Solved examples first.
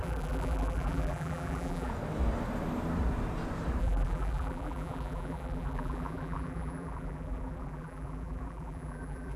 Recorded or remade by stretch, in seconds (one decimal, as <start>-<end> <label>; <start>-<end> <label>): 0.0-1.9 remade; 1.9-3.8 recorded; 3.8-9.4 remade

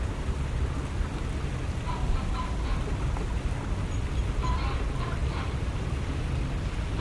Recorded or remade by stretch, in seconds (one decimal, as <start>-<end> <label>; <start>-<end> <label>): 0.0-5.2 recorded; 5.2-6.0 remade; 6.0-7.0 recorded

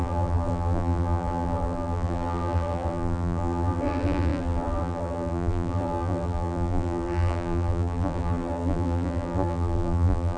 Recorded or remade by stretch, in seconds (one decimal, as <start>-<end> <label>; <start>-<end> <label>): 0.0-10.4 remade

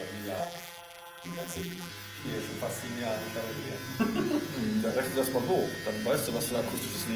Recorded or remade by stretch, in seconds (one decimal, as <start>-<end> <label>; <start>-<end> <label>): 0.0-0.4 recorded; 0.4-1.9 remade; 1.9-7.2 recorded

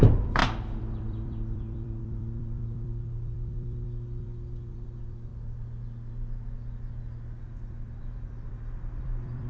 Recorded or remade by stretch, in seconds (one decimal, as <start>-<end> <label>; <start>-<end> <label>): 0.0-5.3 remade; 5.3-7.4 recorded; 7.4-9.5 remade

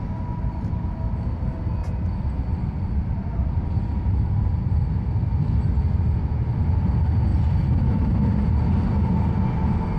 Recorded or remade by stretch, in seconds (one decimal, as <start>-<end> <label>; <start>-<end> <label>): 0.0-1.8 recorded; 1.8-2.4 remade; 2.4-7.3 recorded; 7.3-8.7 remade; 8.7-10.0 recorded

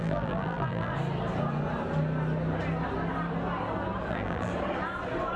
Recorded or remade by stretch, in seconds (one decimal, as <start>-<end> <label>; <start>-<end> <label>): 0.0-0.9 remade; 0.9-4.1 recorded; 4.1-4.5 remade; 4.5-5.4 recorded